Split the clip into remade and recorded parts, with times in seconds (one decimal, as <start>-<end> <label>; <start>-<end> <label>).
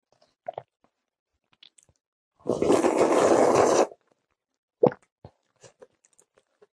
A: 0.0-6.7 recorded